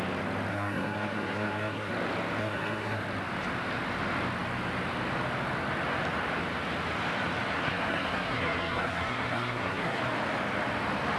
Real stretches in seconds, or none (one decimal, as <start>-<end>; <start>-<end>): 0.0-0.5; 1.9-2.4; 3.0-7.5; 10.0-11.2